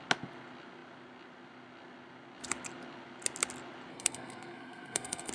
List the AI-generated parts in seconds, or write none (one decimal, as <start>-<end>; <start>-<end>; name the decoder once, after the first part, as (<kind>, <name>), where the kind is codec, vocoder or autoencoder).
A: 3.9-5.3 (codec, SNAC)